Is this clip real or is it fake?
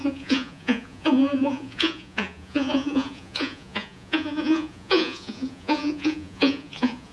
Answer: fake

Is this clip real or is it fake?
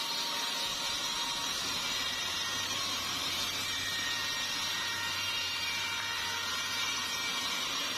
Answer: fake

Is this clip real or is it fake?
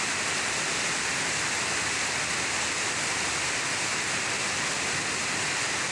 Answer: real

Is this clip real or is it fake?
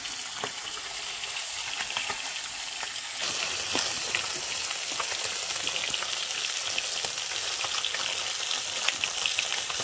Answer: real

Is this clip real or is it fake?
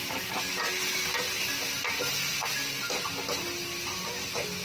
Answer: real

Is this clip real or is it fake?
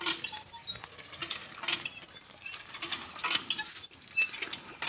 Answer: real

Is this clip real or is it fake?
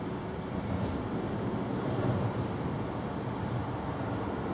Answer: real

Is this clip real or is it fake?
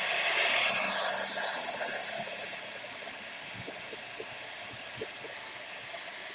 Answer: real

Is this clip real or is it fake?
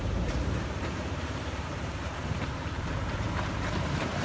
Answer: fake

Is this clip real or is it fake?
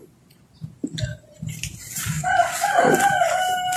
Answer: real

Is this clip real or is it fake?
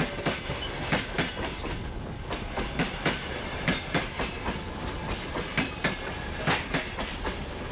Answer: real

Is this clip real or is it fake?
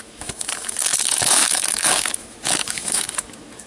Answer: fake